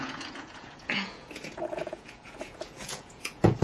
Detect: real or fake fake